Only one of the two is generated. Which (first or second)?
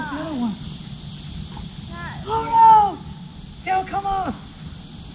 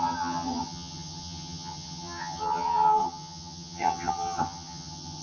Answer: second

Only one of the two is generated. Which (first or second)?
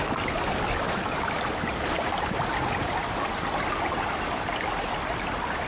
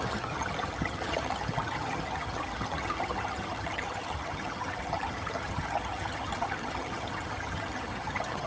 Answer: second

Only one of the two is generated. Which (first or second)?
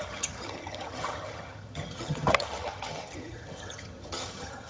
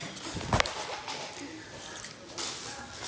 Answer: first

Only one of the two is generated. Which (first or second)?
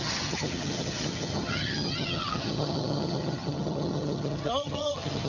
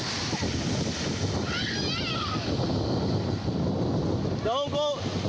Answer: first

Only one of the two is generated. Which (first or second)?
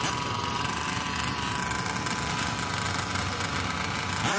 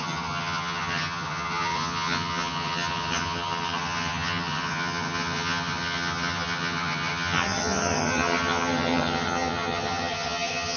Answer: second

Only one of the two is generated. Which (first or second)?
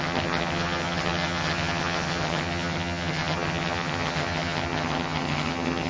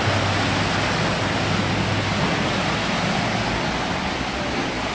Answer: first